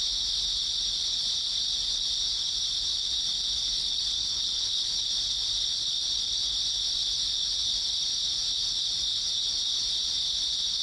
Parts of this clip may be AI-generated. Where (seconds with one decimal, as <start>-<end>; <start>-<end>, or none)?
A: 3.8-5.0